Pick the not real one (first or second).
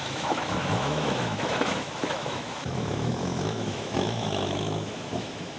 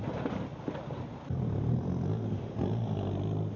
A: first